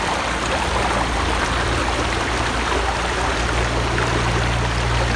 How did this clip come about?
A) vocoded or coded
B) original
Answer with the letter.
B